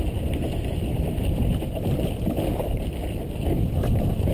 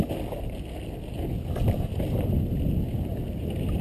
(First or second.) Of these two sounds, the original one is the second